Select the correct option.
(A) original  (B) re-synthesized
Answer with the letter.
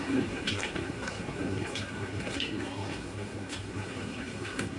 B